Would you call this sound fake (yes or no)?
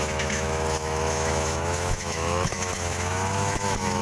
yes